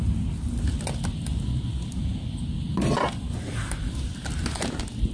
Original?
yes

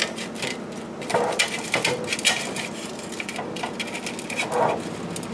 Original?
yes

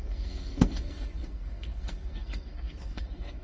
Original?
no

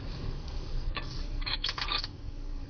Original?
no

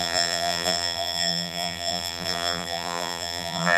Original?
no